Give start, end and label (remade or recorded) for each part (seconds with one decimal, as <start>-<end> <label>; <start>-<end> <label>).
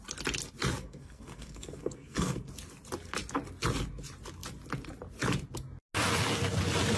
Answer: 0.0-0.8 recorded; 0.8-2.5 remade; 2.5-7.0 recorded